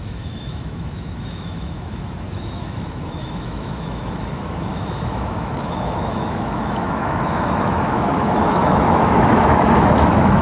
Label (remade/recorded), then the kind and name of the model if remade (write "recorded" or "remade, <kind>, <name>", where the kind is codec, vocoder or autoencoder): remade, autoencoder, DAC-VAE